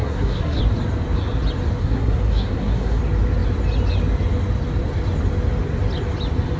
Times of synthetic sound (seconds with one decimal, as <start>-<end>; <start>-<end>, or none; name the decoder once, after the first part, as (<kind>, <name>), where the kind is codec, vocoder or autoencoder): 0.0-0.6 (codec, SNAC); 1.8-3.0